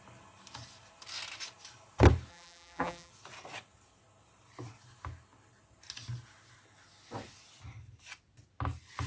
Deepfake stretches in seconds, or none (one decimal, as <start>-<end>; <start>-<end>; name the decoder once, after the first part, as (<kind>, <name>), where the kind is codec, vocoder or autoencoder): 2.3-3.1 (vocoder, BigVGAN v2)